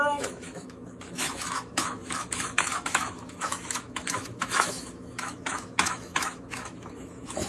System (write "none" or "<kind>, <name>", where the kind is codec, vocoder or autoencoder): autoencoder, DAC-VAE